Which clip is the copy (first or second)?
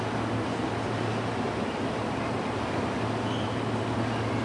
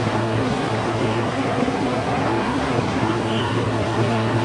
second